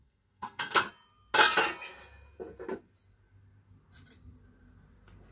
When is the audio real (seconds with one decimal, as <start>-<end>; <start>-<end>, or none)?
0.8-5.3